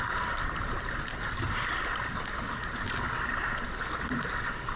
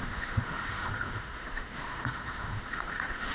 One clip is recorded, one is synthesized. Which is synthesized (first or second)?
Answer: second